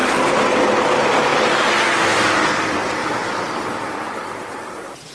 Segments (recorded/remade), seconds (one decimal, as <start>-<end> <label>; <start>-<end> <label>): 0.0-0.7 recorded; 0.7-1.3 remade; 1.3-2.6 recorded; 2.6-5.1 remade